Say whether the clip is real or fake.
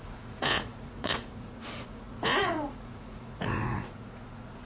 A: fake